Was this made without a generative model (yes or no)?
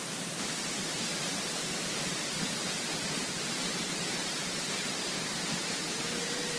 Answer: no